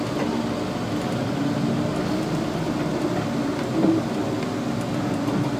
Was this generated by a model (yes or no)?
no